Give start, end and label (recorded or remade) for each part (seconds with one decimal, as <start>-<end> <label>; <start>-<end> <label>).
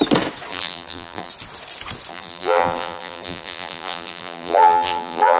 0.0-0.5 recorded; 0.5-1.3 remade; 1.3-2.1 recorded; 2.1-5.4 remade